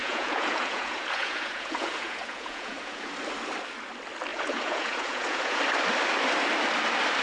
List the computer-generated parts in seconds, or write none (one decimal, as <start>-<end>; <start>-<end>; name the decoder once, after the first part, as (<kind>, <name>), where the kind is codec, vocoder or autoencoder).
0.0-3.1 (vocoder, Vocos); 4.3-5.6